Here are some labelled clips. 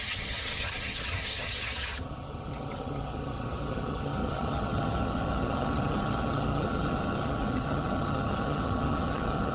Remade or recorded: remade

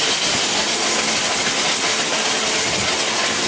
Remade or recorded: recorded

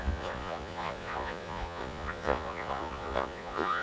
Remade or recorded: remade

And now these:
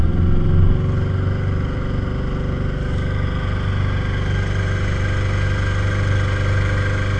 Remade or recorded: recorded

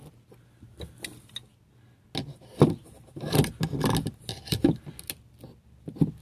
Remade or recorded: recorded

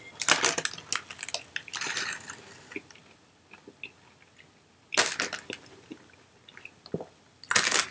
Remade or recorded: recorded